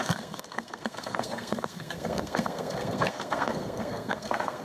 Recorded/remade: remade